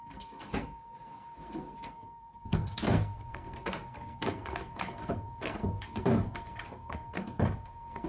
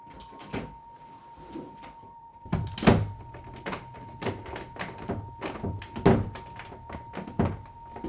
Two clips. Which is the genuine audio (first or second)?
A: second